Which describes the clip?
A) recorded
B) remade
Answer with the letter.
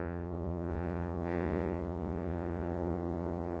B